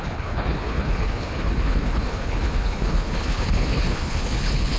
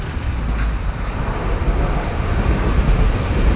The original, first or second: second